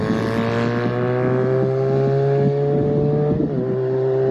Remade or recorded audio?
recorded